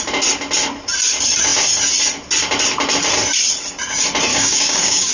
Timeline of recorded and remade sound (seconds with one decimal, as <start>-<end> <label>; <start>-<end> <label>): 0.0-4.3 recorded; 4.3-5.1 remade

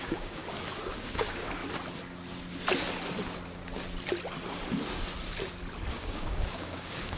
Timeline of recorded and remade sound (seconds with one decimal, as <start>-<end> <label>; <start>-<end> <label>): 0.0-0.4 remade; 0.4-1.0 recorded; 1.0-1.6 remade; 1.6-5.9 recorded; 5.9-7.2 remade

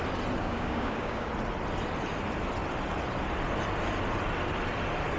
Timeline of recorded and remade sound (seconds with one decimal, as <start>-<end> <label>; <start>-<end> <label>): 0.0-0.4 recorded; 0.4-1.3 remade; 1.3-5.2 recorded

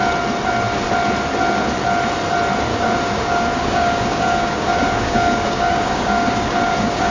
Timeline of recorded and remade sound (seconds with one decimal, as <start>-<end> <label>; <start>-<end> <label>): 0.0-2.7 recorded; 2.7-7.1 remade

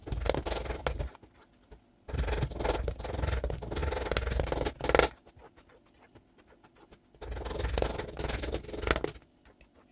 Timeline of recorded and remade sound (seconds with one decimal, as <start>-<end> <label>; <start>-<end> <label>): 0.0-9.9 recorded

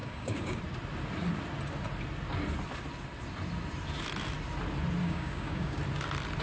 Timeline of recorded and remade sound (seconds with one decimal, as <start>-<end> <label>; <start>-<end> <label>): 0.0-0.6 remade; 0.6-5.0 recorded; 5.0-5.8 remade; 5.8-6.4 recorded

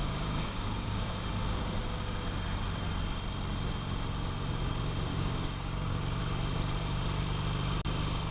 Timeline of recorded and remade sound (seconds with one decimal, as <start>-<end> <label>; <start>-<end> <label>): 0.0-1.3 remade; 1.3-5.1 recorded; 5.1-6.2 remade; 6.2-8.3 recorded

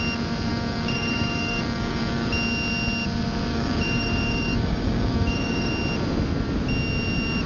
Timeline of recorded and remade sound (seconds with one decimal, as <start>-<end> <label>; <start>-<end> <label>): 0.0-0.5 recorded; 0.5-2.3 remade; 2.3-3.5 recorded; 3.5-5.7 remade; 5.7-7.5 recorded